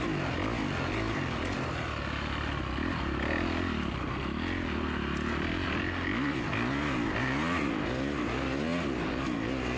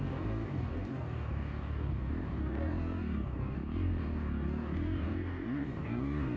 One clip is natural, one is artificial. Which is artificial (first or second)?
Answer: second